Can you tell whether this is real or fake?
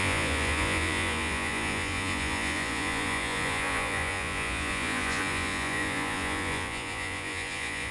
fake